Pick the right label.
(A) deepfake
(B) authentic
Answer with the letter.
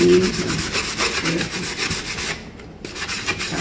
B